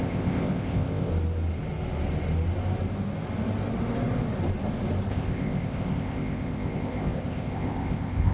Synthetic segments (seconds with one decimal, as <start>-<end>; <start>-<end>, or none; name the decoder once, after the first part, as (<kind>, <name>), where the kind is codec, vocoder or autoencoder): 0.0-1.1 (codec, ZipCodec); 5.1-8.3